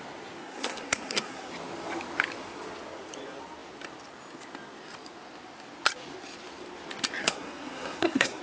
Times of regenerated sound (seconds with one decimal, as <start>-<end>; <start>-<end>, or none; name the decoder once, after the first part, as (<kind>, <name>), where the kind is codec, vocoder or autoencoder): 0.4-1.5 (codec, SNAC); 7.2-8.4